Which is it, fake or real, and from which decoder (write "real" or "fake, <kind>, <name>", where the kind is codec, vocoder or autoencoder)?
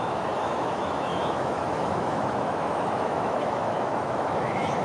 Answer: fake, autoencoder, DAC-VAE